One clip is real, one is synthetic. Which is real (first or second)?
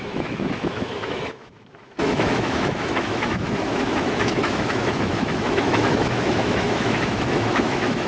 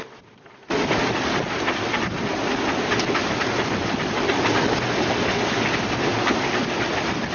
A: second